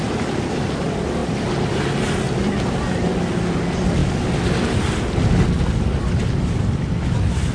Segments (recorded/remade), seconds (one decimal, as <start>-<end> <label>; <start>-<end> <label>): 0.0-7.5 recorded